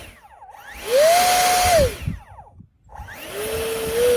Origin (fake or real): real